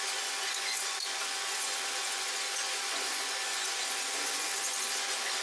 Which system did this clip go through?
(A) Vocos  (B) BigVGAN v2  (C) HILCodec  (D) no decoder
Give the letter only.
A